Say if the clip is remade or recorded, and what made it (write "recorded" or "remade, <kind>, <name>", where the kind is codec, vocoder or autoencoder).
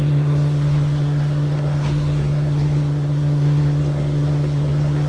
remade, codec, SNAC